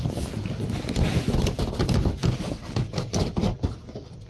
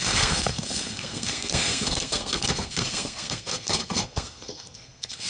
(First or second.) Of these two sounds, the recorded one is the first